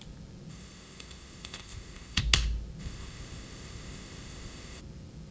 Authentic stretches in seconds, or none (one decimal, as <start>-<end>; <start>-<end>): 0.0-0.5; 2.2-2.8; 4.8-5.3